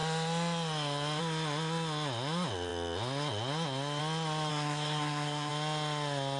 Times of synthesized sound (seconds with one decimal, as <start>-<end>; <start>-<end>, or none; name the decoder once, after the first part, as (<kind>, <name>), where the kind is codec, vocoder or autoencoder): 4.5-5.5 (codec, SNAC)